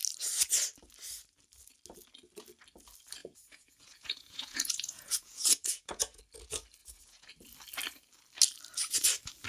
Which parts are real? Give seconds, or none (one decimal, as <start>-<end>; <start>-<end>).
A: 0.0-3.2; 6.2-6.8; 7.3-9.5